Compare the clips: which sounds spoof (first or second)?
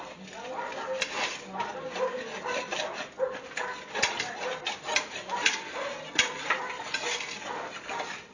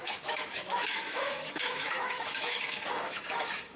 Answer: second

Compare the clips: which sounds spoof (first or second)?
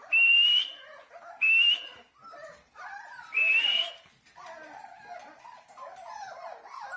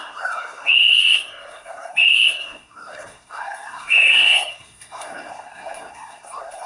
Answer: second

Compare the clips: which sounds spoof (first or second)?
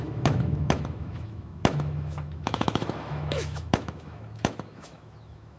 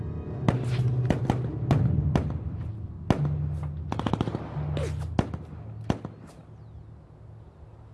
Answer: first